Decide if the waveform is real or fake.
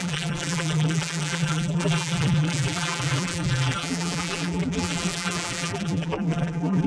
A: fake